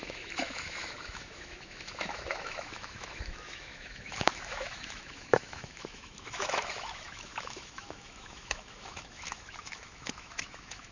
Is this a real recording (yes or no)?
no